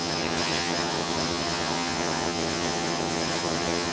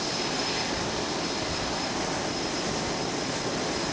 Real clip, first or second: second